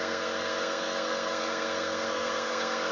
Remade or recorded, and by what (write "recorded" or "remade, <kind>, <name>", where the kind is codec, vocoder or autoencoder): remade, codec, SNAC